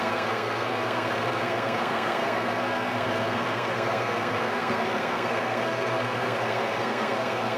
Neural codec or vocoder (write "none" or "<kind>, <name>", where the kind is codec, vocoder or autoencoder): codec, SNAC